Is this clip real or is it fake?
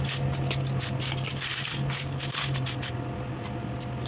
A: real